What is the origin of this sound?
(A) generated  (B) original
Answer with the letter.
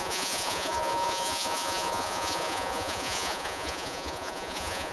A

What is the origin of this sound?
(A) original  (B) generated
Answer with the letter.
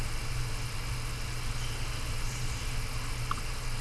A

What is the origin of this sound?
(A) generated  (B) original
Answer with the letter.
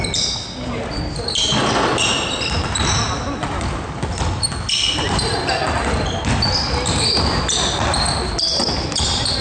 B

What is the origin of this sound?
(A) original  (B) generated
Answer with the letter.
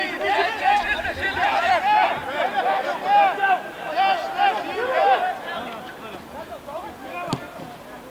A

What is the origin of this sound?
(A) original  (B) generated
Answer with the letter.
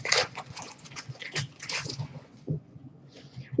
B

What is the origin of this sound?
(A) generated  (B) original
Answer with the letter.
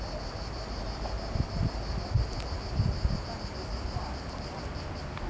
B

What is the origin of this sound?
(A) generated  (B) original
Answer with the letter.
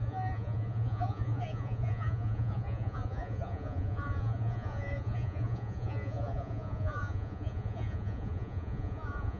A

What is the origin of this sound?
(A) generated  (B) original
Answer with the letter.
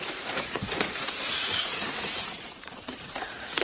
A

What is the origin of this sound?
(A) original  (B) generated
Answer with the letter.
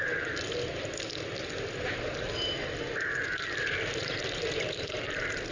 A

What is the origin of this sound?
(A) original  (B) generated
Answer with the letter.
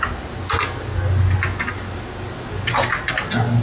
A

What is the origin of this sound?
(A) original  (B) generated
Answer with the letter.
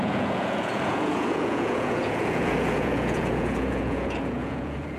B